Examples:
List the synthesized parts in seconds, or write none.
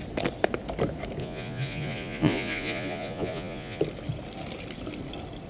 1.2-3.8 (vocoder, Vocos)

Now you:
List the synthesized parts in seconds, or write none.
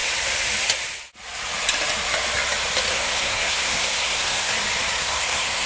2.9-4.5 (codec, SNAC); 5.0-5.7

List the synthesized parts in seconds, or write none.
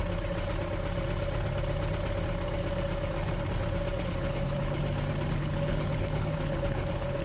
4.0-4.8 (codec, HILCodec); 5.4-7.2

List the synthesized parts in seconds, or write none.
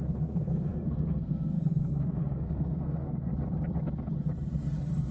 0.0-3.3 (codec, SNAC)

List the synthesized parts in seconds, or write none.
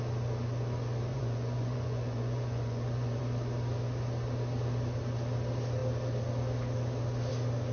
1.1-3.2 (vocoder, Vocos)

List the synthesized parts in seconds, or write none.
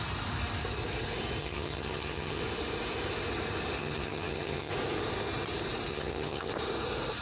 1.4-2.4 (vocoder, HiFi-GAN); 3.8-4.7; 5.9-6.5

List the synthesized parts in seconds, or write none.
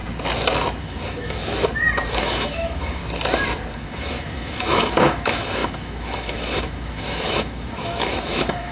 0.8-1.5 (autoencoder, DAC-VAE); 2.2-3.0; 3.7-8.7